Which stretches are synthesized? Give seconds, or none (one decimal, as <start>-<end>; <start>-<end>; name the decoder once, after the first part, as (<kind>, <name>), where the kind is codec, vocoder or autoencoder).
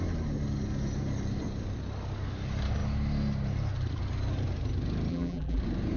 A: 5.1-5.6 (vocoder, BigVGAN v2)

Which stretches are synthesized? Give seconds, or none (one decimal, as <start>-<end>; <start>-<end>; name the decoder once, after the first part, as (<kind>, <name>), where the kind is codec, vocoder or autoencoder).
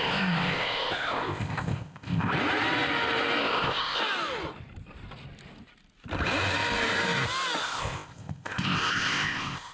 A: 0.0-2.3 (codec, ZipCodec); 3.4-4.0; 7.6-9.7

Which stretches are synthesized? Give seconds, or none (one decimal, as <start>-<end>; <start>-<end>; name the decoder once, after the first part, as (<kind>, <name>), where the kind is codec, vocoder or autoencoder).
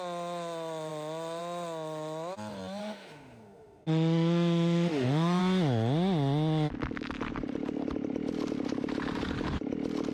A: 2.8-5.4 (autoencoder, DAC-VAE)